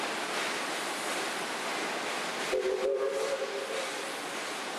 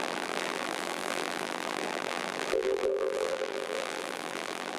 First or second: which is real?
first